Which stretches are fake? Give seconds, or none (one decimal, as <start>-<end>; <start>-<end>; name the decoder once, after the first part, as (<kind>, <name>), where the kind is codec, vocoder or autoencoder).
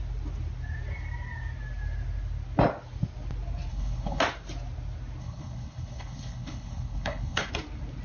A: 3.7-4.2 (codec, HILCodec); 5.2-7.5